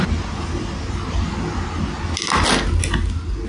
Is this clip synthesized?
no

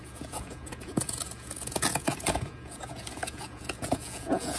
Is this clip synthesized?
yes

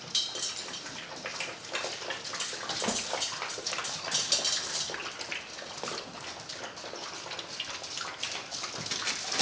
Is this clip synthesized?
no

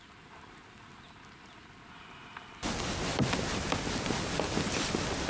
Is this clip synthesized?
no